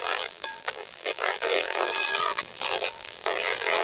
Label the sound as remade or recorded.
remade